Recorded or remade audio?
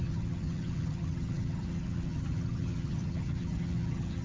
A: remade